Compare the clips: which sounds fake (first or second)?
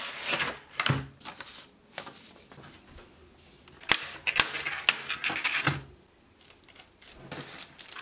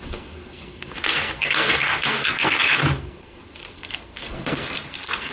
second